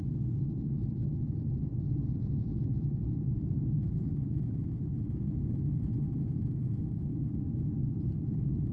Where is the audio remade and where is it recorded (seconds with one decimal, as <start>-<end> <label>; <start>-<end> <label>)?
0.0-1.7 recorded; 1.7-3.6 remade; 3.6-7.1 recorded; 7.1-8.7 remade